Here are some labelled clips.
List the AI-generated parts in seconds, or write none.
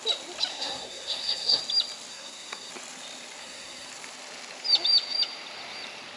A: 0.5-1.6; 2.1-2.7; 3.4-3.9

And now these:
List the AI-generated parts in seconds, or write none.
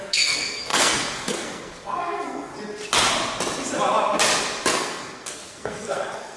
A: 0.0-2.5; 4.7-6.4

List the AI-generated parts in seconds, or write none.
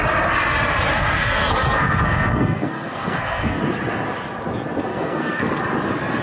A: 0.9-3.6; 4.9-5.6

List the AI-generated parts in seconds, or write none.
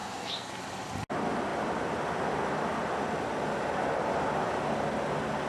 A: 0.0-0.5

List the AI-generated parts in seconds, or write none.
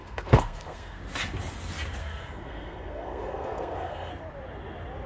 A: 0.0-1.0; 2.0-4.1